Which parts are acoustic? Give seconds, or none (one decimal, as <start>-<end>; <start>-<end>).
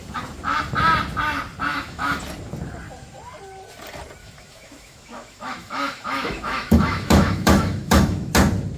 0.0-1.7; 2.2-4.2; 8.3-8.8